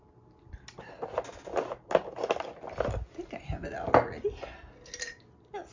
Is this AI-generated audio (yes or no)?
no